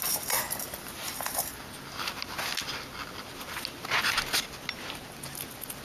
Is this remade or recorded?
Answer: recorded